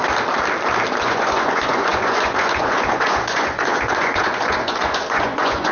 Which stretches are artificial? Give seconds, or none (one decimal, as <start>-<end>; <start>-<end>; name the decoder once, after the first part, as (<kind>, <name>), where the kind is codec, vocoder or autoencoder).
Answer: 1.0-5.7 (vocoder, Vocos)